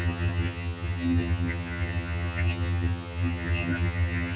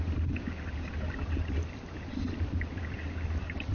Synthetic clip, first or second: first